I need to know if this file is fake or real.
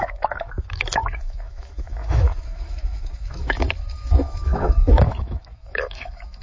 fake